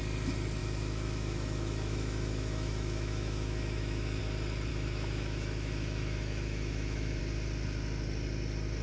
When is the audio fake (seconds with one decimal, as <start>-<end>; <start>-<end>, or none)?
0.6-4.2; 4.7-7.2